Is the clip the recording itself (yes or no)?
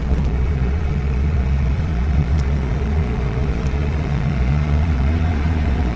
no